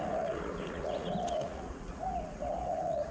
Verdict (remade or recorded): remade